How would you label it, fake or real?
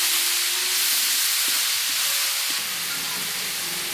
real